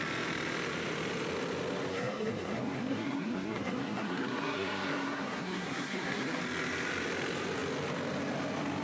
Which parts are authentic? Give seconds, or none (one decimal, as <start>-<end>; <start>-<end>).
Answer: 0.0-1.9; 6.4-8.8